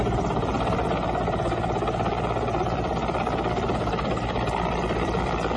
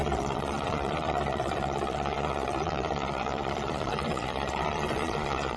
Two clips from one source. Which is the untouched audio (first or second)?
first